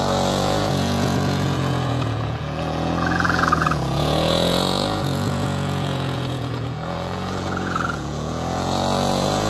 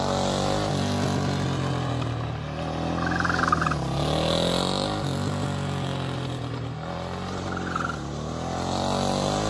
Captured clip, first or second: second